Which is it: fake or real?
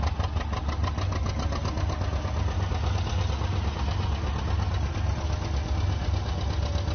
real